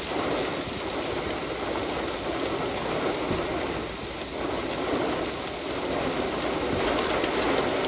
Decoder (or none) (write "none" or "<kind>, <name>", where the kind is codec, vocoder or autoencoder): none